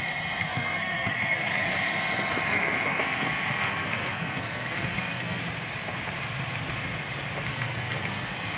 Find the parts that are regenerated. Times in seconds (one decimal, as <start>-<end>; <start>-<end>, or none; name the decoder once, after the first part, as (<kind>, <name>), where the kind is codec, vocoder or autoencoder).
0.4-1.7 (codec, SNAC); 2.5-5.4; 7.5-8.6